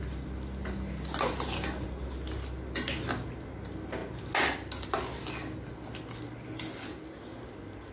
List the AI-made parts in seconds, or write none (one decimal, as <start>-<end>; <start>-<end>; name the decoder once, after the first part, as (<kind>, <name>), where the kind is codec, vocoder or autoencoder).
none